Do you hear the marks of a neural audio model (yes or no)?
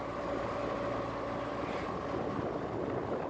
no